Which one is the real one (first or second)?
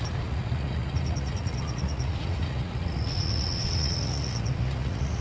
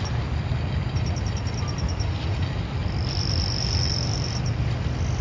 second